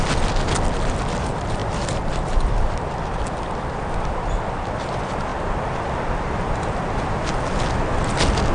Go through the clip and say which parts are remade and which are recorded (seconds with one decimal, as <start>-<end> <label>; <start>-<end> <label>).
0.0-1.6 recorded; 1.6-4.3 remade; 4.3-5.3 recorded; 5.3-6.4 remade; 6.4-8.5 recorded